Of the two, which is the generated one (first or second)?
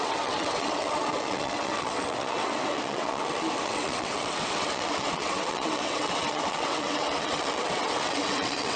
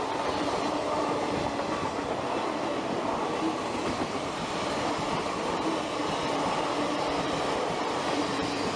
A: first